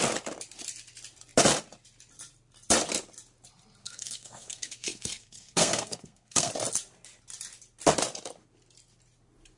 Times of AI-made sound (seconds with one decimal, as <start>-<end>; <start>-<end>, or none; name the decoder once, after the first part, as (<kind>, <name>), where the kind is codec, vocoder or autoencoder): 3.8-6.5 (codec, SNAC)